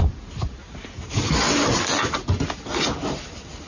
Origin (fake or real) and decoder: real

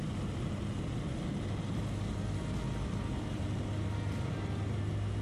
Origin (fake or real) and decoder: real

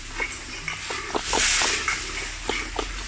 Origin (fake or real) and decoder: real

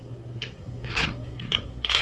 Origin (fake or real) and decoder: fake, codec, SNAC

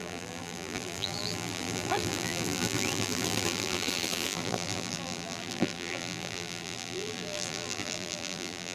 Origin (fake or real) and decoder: fake, vocoder, BigVGAN v2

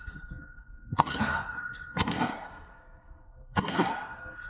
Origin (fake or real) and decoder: fake, codec, SNAC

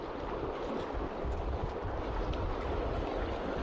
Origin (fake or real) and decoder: real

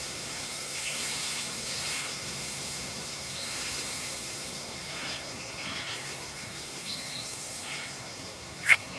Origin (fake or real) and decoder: fake, codec, SNAC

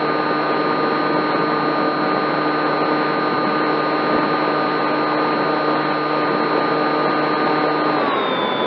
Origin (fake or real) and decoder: real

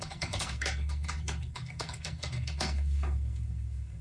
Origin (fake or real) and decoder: fake, codec, SNAC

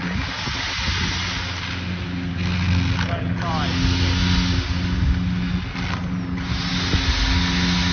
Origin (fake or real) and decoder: real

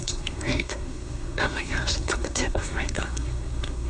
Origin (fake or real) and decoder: fake, codec, SNAC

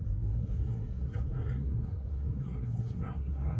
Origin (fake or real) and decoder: fake, codec, SNAC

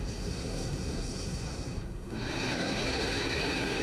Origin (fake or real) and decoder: fake, codec, SNAC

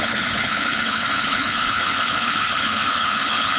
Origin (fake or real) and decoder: fake, codec, HILCodec